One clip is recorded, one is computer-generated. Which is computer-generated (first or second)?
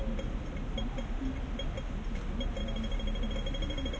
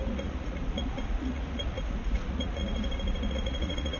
second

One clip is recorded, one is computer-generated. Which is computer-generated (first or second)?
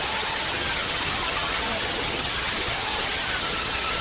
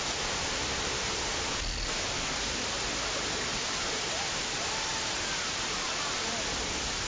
first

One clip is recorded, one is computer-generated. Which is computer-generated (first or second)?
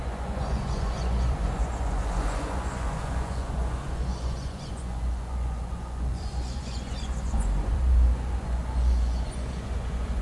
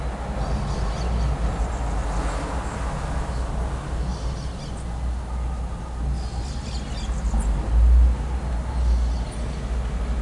first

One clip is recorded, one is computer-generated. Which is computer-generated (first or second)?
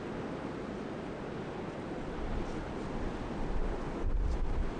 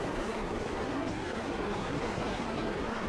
second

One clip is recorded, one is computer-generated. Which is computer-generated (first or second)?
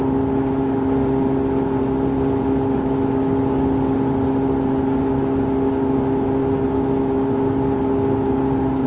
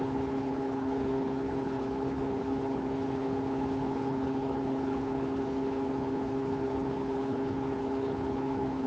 second